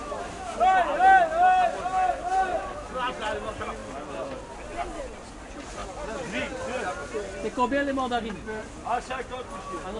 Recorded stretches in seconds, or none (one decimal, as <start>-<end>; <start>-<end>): 0.0-10.0